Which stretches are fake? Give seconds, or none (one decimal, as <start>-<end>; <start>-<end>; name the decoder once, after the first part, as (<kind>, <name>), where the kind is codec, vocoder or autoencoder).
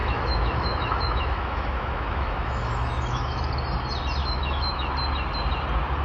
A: 0.0-3.5 (autoencoder, DAC-VAE); 4.2-4.9